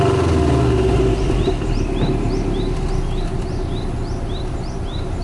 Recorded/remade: recorded